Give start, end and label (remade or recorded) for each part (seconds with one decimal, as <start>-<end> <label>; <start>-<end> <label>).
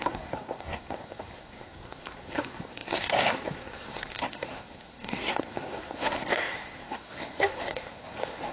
0.0-8.5 remade